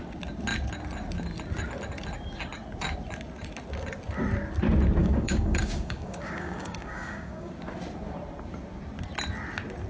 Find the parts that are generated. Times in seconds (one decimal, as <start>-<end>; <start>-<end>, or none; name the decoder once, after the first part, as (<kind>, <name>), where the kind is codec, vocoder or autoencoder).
5.0-7.5 (codec, DAC)